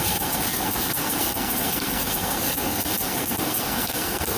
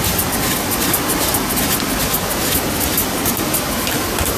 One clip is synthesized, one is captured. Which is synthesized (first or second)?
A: first